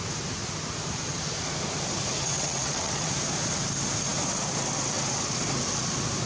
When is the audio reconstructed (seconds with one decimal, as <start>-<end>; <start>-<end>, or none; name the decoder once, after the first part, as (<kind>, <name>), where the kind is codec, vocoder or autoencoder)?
2.3-3.1 (vocoder, WaveNeXt)